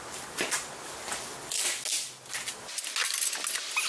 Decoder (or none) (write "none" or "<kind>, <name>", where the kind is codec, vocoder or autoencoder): none